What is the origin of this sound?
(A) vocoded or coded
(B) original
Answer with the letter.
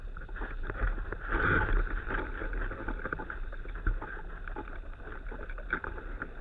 B